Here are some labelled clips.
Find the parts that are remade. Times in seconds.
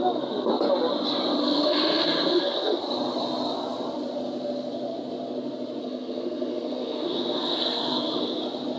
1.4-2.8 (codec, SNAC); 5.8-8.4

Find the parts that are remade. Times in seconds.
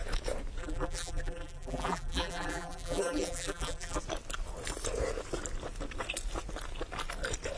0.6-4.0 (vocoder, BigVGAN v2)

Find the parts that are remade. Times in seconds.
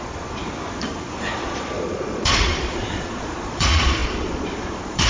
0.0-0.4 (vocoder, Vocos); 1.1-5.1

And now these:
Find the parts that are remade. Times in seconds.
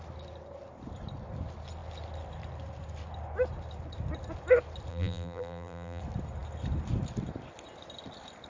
4.9-6.0 (vocoder, BigVGAN v2)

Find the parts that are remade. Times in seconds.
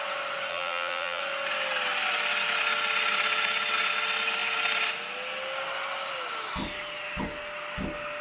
0.5-1.2 (vocoder, BigVGAN v2)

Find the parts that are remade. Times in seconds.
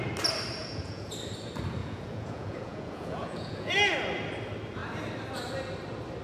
0.6-1.1 (vocoder, Vocos); 1.8-3.7